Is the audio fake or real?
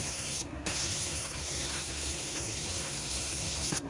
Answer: fake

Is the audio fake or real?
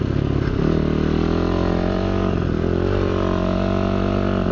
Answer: real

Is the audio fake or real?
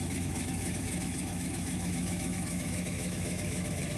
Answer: fake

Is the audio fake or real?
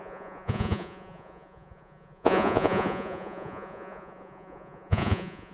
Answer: fake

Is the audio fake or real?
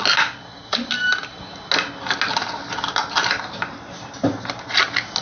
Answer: real